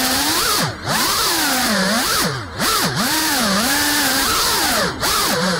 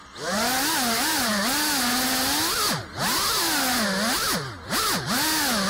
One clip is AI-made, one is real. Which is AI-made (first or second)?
first